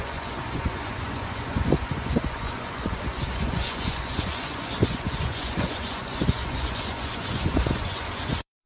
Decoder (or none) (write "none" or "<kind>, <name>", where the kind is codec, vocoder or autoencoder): vocoder, Vocos